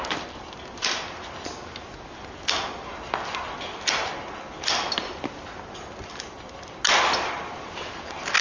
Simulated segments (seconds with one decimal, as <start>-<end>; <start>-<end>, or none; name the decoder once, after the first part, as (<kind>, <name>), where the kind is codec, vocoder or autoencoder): none